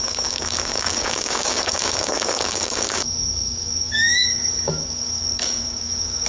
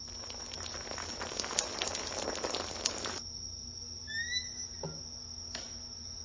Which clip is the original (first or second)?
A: second